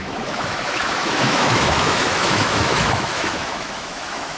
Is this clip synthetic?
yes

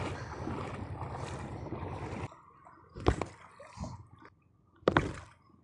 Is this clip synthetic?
no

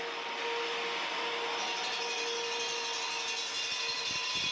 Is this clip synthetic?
no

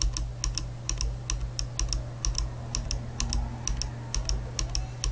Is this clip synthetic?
no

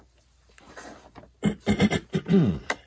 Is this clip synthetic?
yes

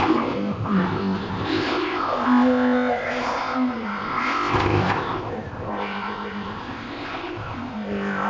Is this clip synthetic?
yes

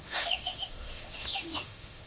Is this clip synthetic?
yes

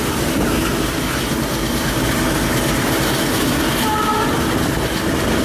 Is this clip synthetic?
no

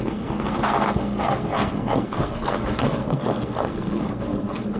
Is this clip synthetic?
yes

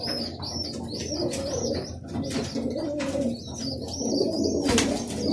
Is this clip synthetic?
no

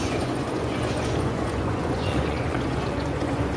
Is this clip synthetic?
yes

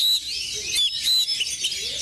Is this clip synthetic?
no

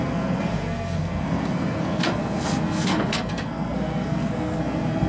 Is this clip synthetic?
yes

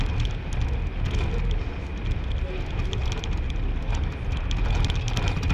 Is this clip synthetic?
no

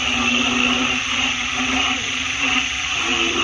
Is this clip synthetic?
no